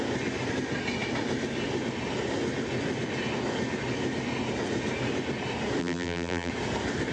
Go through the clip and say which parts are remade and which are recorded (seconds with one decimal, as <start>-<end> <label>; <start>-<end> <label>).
0.0-5.8 recorded; 5.8-6.5 remade; 6.5-7.1 recorded